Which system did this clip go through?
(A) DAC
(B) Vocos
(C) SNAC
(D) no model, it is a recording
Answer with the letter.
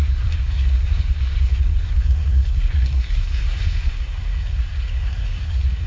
C